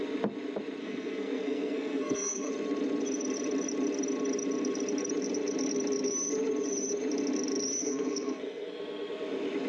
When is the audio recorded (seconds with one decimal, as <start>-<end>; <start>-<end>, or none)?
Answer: 0.0-0.8; 2.5-7.8; 8.8-9.7

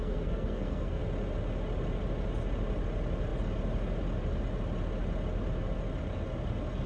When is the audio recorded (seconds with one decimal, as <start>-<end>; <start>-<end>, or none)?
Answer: 1.0-6.9

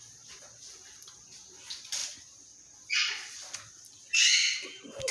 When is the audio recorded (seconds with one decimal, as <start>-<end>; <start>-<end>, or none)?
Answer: 0.0-5.1

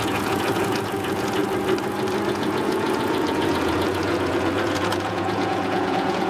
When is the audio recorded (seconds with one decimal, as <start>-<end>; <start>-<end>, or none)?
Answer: 1.4-2.3

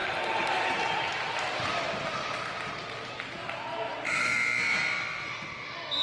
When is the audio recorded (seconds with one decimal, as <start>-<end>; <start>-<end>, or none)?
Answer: 0.8-6.0

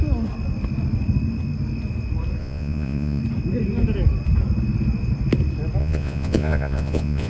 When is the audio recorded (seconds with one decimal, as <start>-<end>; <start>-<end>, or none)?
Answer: 0.0-2.4; 3.2-5.8

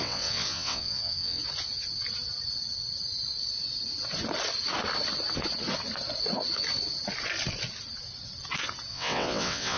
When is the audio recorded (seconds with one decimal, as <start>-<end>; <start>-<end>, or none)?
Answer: 1.4-8.9